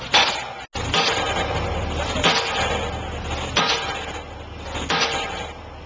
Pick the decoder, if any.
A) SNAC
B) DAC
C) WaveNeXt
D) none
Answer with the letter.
D